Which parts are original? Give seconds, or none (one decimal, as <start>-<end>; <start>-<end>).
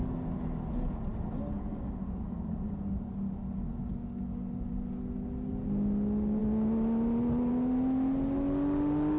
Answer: 0.0-9.2